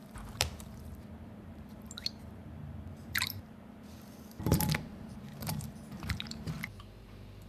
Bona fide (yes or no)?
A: no